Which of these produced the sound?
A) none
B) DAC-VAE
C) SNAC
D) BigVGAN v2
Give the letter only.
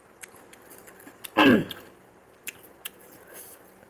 A